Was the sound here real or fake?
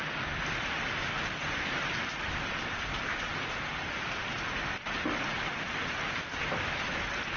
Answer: real